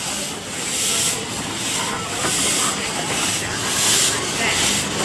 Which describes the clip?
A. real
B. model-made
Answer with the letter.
A